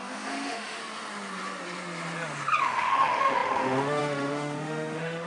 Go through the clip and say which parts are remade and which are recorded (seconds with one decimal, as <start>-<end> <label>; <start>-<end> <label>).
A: 0.0-0.8 remade; 0.8-2.6 recorded; 2.6-5.3 remade